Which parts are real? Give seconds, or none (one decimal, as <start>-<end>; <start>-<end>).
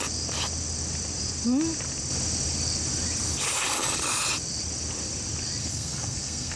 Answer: 0.0-5.6